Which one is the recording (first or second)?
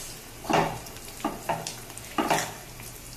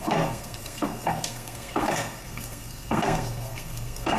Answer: first